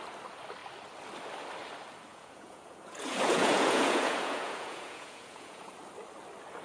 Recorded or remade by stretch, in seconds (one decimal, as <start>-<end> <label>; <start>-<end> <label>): 0.0-2.1 recorded; 2.1-5.7 remade; 5.7-6.6 recorded